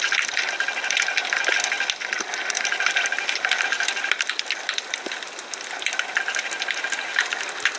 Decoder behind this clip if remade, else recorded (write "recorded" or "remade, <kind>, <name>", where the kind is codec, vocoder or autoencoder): recorded